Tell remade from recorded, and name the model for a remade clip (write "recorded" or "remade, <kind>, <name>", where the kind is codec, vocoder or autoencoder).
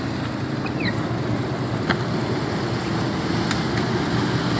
recorded